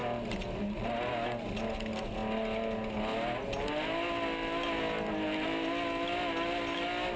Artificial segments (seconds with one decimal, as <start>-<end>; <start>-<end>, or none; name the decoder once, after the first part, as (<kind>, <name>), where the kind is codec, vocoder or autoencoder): none